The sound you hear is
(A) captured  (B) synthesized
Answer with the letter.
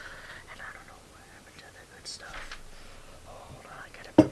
A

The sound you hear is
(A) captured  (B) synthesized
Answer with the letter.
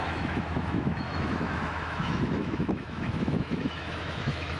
B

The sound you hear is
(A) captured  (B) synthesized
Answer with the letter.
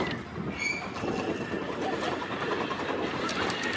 A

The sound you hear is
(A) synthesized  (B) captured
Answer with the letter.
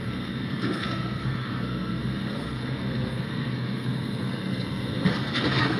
A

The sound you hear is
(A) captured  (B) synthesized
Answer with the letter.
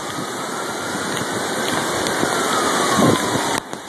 A